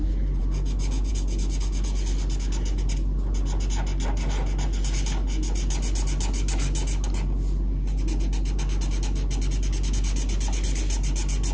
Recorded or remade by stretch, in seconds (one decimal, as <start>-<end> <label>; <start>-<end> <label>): 0.0-11.5 recorded